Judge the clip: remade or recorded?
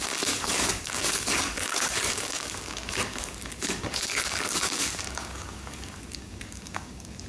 remade